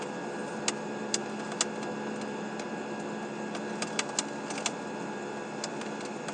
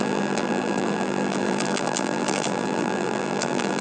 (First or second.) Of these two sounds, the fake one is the second